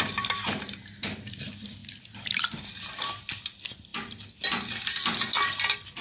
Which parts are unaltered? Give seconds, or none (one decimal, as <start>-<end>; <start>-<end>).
0.0-1.8; 2.4-6.0